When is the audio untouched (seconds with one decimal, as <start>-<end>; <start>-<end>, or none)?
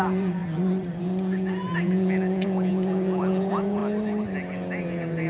0.4-1.0; 3.8-4.8